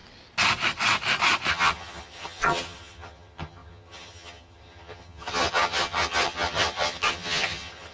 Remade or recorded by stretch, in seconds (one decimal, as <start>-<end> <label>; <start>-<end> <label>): 0.0-1.5 recorded; 1.5-7.9 remade